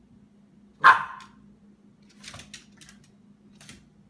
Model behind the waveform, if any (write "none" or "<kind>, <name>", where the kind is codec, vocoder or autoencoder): none